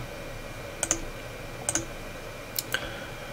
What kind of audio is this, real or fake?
real